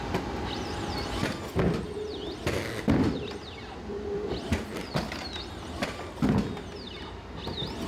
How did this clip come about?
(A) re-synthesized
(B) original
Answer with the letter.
B